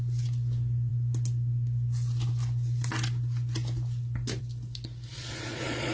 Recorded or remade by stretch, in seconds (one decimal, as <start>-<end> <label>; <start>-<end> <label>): 0.0-5.1 recorded; 5.1-5.9 remade